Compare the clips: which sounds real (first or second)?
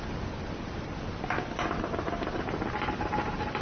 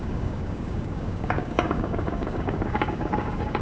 first